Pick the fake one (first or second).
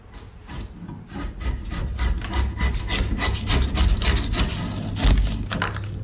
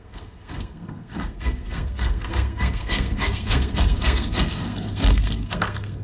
second